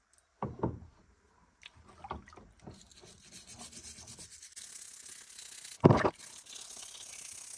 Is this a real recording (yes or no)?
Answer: yes